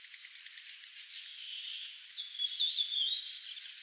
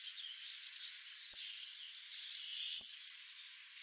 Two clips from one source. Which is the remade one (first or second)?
second